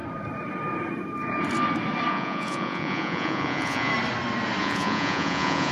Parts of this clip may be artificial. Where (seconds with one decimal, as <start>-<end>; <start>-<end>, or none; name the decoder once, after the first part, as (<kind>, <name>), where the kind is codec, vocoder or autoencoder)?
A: 2.1-3.9 (vocoder, Vocos); 4.6-5.7

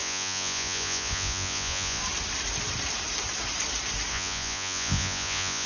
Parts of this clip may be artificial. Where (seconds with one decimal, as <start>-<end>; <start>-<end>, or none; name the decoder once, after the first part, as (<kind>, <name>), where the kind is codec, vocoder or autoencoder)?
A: 0.0-2.0 (vocoder, Vocos); 4.1-5.7

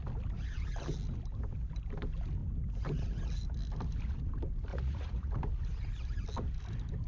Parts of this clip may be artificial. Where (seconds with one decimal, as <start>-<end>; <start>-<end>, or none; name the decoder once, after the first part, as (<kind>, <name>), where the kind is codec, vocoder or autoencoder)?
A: 4.7-5.3 (vocoder, Vocos)

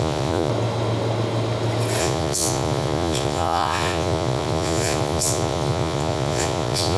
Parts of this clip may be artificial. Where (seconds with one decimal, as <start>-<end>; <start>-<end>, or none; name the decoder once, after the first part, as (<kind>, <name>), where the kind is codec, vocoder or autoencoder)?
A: 0.0-0.5 (vocoder, Vocos); 2.0-7.0

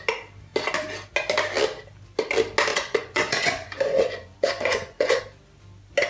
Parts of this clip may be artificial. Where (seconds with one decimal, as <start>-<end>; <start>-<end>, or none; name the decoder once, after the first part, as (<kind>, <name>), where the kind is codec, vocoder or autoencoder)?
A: 2.7-5.2 (vocoder, Vocos)